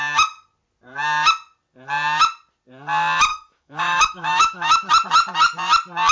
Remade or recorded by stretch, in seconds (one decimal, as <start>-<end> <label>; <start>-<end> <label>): 0.0-3.3 recorded; 3.3-4.9 remade; 4.9-6.1 recorded